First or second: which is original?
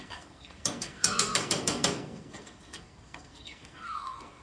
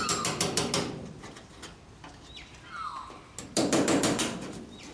second